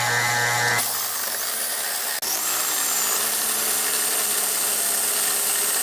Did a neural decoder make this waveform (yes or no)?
no